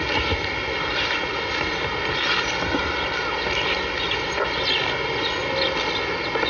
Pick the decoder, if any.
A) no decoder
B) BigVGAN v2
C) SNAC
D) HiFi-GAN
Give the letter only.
A